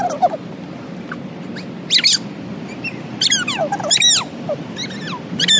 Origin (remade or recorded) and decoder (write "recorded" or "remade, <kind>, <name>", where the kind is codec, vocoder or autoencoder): recorded